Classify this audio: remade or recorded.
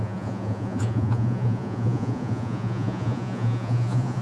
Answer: remade